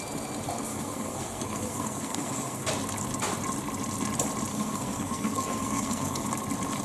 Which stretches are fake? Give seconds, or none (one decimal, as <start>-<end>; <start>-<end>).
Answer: 0.7-2.7; 4.5-6.3